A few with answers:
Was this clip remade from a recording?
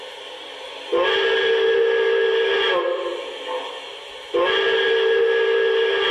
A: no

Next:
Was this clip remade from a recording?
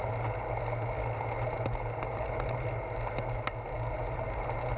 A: no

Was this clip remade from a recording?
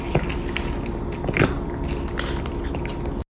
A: no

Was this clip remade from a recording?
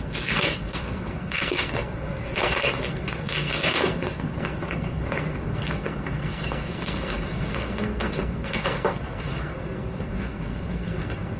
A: yes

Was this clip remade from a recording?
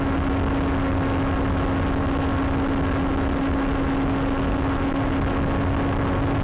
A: no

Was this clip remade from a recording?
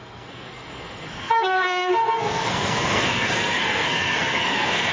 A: yes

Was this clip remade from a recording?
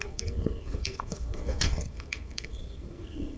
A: yes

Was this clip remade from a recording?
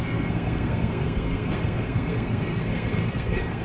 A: yes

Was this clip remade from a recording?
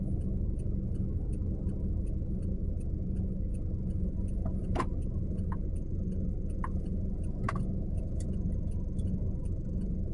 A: no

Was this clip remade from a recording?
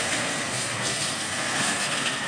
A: yes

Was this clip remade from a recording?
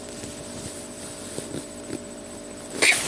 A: no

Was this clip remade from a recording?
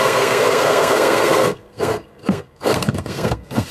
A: yes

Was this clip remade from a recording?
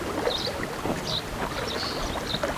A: no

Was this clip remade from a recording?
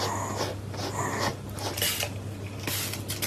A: no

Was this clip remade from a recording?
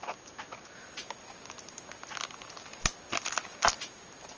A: no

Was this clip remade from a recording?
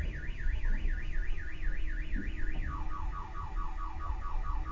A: no